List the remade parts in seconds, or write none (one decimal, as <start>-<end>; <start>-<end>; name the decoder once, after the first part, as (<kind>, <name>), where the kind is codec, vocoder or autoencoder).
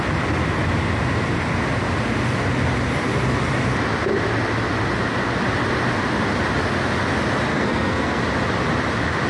7.5-8.2 (codec, SNAC)